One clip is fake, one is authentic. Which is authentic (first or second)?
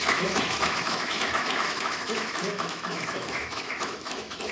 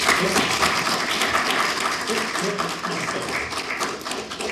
second